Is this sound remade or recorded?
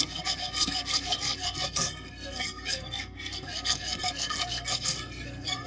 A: remade